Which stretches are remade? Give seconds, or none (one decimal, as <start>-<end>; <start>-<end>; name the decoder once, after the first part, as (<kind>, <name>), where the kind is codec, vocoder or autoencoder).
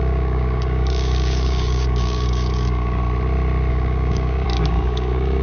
0.0-3.0 (codec, DAC); 3.7-5.4